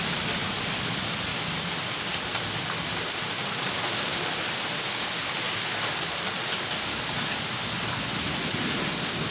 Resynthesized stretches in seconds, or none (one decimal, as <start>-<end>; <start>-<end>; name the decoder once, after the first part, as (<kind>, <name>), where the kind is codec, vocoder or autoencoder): none